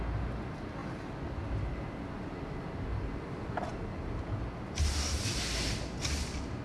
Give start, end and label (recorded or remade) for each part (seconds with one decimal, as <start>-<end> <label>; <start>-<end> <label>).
0.0-6.6 recorded